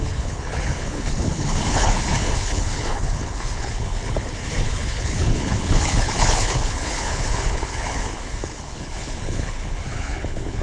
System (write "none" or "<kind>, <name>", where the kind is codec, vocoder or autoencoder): codec, HILCodec